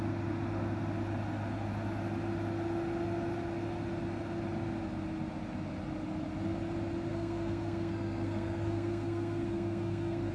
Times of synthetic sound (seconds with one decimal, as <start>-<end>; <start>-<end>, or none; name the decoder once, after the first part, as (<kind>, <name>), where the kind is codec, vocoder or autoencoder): 7.1-10.3 (codec, SNAC)